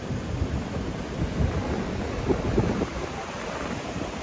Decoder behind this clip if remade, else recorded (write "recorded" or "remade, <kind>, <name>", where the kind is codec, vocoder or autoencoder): recorded